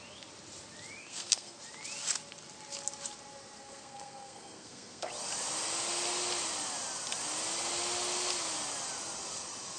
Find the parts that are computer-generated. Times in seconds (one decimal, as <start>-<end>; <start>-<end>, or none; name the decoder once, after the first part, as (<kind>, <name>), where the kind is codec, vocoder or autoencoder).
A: 1.0-1.6 (codec, SNAC); 3.6-5.1